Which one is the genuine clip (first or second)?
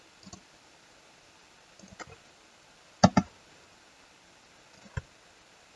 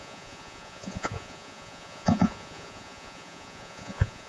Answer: first